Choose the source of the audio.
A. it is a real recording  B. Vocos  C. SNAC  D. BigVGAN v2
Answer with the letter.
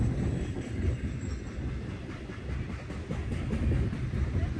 A